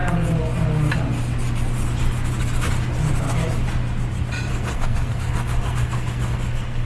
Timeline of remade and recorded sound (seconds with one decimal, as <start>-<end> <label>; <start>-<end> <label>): 0.0-4.5 recorded; 4.5-6.9 remade